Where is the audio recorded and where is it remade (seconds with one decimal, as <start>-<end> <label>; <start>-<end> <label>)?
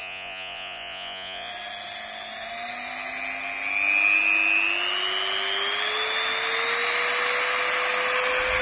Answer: 0.0-1.5 remade; 1.5-8.6 recorded